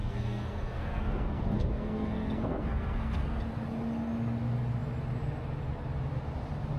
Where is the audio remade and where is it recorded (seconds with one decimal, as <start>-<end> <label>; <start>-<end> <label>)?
0.0-3.4 remade; 3.4-6.8 recorded